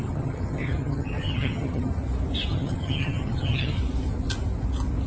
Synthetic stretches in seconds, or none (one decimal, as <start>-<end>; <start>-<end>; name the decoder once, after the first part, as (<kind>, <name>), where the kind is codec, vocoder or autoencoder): 0.0-1.9 (vocoder, HiFi-GAN); 2.5-3.8